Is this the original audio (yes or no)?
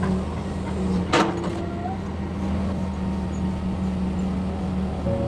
yes